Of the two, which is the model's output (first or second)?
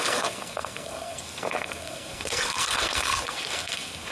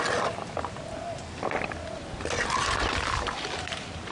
first